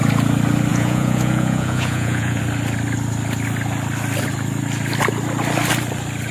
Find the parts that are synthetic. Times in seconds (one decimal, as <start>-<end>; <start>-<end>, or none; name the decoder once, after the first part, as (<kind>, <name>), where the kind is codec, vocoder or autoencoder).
0.7-2.4 (vocoder, Vocos)